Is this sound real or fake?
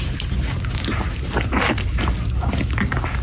real